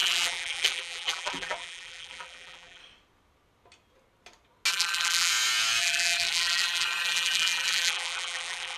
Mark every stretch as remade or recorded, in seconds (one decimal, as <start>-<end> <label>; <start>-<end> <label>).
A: 0.0-2.8 remade; 2.8-4.7 recorded; 4.7-5.3 remade; 5.3-5.8 recorded; 5.8-8.8 remade